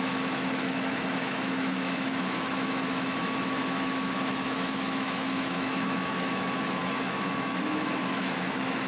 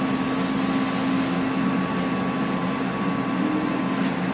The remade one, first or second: first